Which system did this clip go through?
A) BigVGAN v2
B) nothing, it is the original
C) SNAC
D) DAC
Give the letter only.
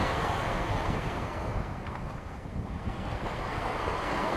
C